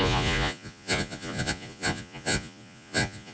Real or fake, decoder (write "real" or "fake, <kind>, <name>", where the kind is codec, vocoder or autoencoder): fake, vocoder, Vocos